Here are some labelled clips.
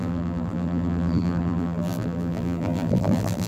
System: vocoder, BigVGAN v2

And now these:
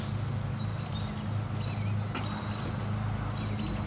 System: none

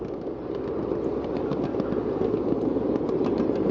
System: none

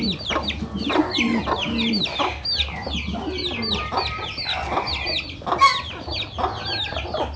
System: none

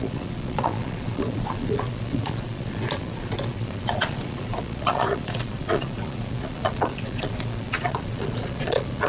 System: vocoder, Vocos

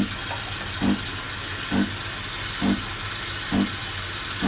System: none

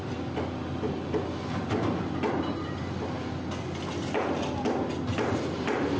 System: none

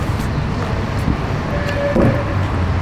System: none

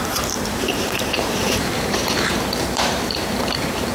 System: vocoder, BigVGAN v2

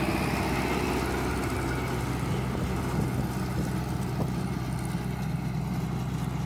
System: none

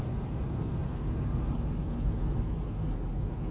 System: none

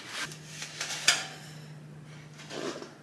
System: none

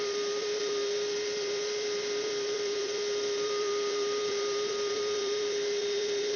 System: vocoder, BigVGAN v2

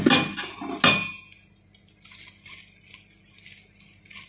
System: none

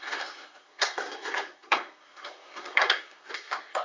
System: codec, SNAC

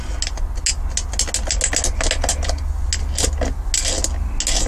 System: none